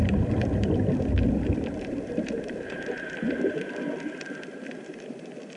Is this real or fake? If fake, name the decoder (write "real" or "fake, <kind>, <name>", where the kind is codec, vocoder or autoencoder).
fake, vocoder, BigVGAN v2